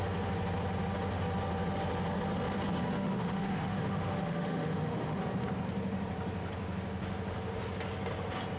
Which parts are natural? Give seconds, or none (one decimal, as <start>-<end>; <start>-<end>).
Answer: 0.0-3.0; 5.2-8.6